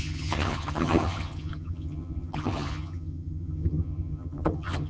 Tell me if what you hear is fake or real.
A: fake